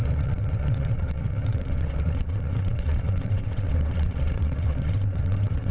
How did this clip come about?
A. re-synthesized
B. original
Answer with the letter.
A